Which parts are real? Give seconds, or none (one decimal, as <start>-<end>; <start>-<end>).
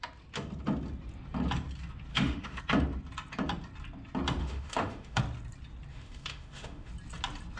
0.0-2.1; 2.6-4.4; 5.2-5.9; 6.9-7.6